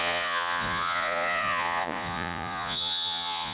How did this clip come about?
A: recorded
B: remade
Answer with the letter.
B